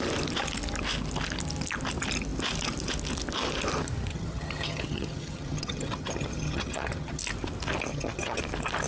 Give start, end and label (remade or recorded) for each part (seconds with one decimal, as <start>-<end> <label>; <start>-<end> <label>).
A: 0.0-4.1 recorded; 4.1-7.2 remade; 7.2-7.9 recorded; 7.9-8.4 remade; 8.4-8.9 recorded